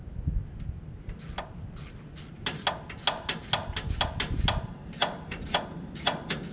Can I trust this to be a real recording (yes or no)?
yes